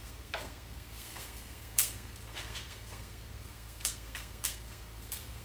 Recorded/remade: remade